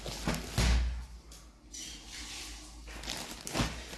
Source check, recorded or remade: recorded